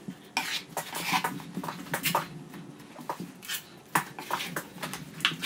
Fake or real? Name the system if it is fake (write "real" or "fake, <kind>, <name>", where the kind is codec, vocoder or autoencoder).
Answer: real